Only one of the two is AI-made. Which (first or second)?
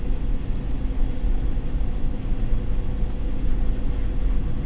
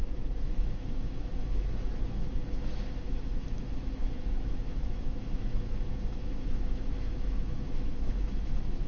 second